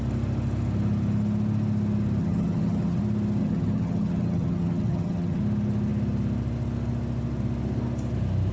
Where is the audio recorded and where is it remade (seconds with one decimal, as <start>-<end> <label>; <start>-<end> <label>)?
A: 0.0-2.2 recorded; 2.2-3.0 remade; 3.0-3.4 recorded; 3.4-5.4 remade; 5.4-8.5 recorded